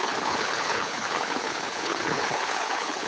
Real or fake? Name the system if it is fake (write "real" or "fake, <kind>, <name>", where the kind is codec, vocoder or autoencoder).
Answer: fake, codec, HILCodec